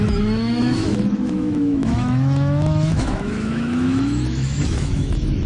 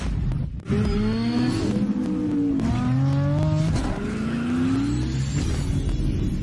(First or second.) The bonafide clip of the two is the second